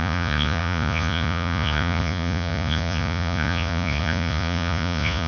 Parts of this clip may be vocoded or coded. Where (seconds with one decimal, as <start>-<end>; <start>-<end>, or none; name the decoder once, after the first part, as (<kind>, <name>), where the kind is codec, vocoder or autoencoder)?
0.0-5.3 (vocoder, Vocos)